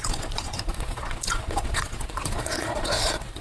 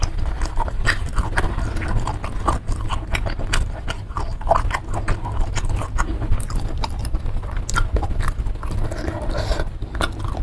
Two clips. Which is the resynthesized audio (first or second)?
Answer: first